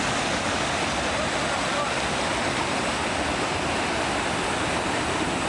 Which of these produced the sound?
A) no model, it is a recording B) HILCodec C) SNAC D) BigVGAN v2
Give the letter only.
A